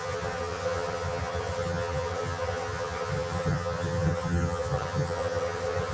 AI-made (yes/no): yes